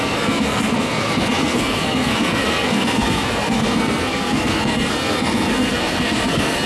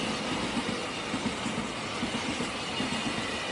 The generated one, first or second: first